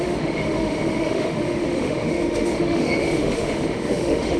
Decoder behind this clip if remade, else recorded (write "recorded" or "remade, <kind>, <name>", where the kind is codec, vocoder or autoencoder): remade, autoencoder, DAC-VAE